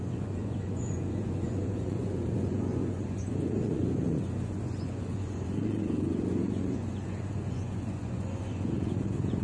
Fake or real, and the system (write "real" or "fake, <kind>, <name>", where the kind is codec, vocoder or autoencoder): fake, vocoder, Vocos